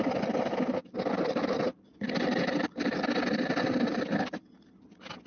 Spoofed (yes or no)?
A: no